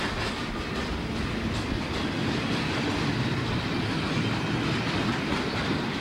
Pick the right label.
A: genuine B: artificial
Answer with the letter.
A